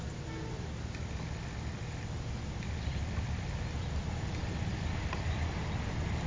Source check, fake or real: real